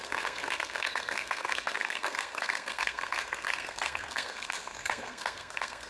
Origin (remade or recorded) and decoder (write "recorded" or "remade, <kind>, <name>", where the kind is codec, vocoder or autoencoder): remade, codec, SNAC